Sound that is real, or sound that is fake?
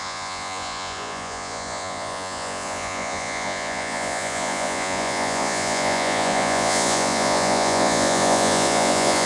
fake